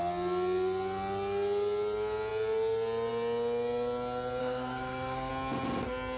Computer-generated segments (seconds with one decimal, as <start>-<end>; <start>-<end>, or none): 4.4-5.3